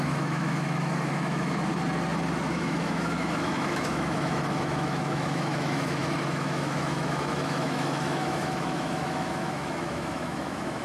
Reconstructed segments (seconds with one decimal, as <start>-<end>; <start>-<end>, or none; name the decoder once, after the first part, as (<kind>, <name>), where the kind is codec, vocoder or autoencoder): 0.0-1.7 (autoencoder, DAC-VAE); 2.5-10.8